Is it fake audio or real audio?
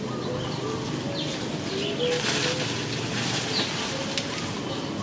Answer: real